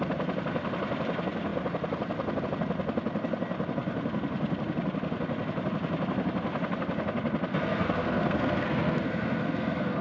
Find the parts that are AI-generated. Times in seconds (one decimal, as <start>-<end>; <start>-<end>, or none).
7.5-10.0